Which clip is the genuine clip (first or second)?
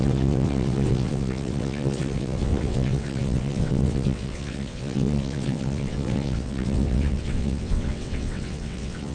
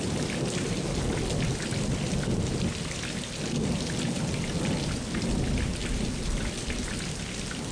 second